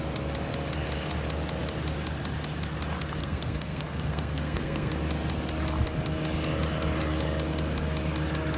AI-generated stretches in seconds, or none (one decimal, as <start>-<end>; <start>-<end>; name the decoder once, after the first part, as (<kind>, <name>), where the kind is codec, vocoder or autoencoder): 3.2-4.9 (codec, SNAC)